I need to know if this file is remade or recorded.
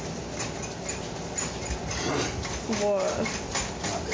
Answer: recorded